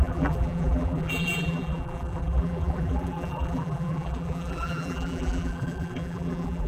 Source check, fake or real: fake